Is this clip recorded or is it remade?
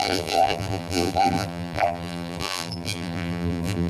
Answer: remade